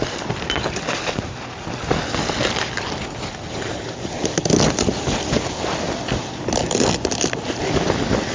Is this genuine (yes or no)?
yes